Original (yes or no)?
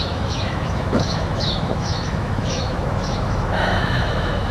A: no